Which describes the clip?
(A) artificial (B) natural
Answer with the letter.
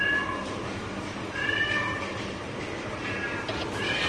A